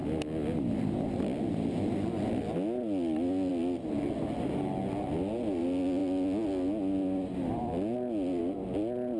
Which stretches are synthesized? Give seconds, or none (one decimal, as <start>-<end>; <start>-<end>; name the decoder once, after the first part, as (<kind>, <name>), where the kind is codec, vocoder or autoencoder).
none